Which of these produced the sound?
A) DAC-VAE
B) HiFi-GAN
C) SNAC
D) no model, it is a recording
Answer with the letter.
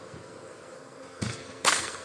C